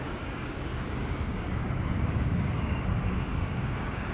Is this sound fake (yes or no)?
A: yes